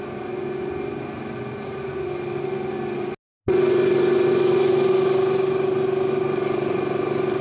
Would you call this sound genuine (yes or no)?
yes